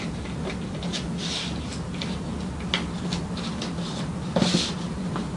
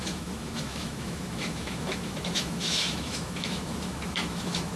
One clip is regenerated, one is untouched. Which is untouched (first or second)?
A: first